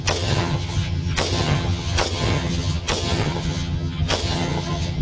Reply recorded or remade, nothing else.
remade